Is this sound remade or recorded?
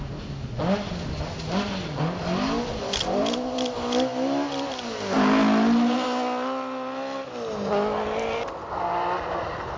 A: recorded